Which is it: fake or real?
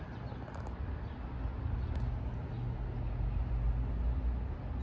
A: real